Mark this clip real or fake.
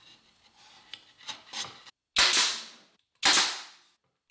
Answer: real